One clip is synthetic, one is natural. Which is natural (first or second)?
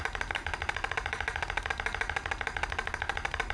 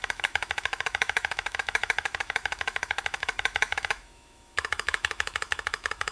first